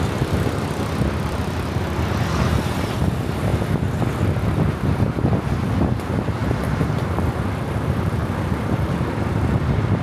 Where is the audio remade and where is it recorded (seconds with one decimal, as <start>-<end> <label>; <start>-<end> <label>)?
0.0-3.5 remade; 3.5-4.1 recorded; 4.1-6.4 remade; 6.4-6.9 recorded; 6.9-10.0 remade